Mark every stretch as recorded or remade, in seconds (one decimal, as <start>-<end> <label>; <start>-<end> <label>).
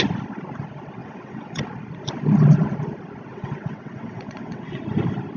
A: 0.0-1.0 recorded; 1.0-1.6 remade; 1.6-3.3 recorded; 3.3-4.8 remade; 4.8-5.4 recorded